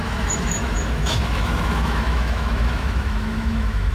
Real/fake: fake